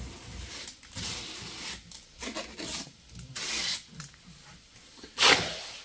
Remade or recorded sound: recorded